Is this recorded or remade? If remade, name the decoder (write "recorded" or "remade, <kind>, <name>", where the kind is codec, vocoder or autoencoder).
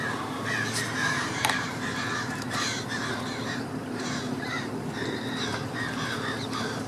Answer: remade, vocoder, BigVGAN v2